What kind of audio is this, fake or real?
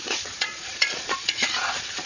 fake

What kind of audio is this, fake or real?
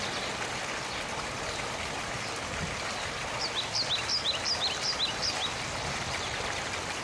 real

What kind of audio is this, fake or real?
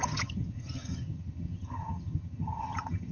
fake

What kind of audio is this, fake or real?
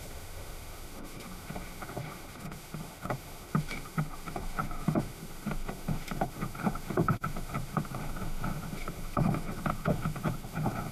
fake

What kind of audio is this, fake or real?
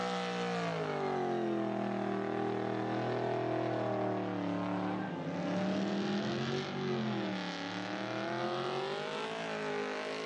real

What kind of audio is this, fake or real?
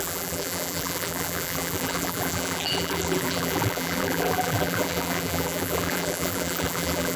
fake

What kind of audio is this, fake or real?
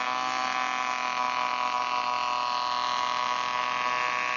real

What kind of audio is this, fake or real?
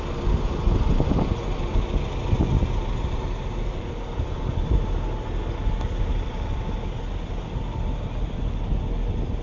real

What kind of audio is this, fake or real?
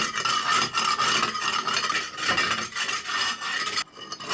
real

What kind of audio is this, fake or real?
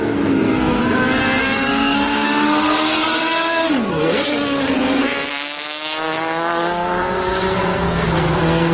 fake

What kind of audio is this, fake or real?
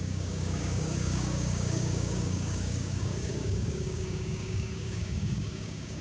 fake